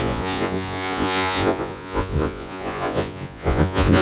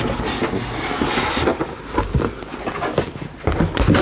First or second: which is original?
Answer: second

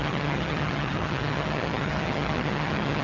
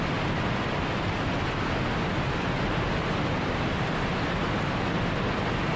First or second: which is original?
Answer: second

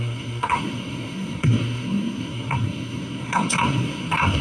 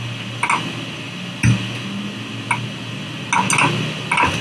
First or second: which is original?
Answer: second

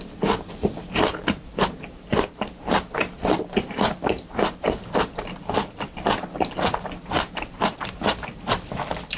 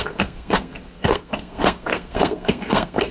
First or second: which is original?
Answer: first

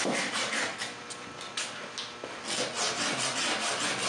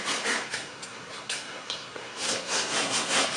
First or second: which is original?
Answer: first